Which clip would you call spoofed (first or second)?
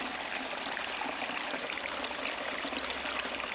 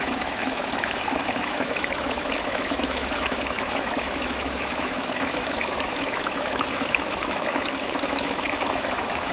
second